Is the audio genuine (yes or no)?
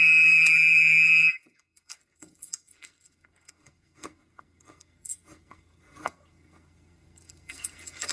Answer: no